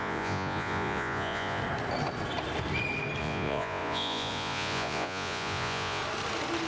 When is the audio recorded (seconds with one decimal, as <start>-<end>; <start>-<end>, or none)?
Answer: 1.6-3.2; 6.0-6.7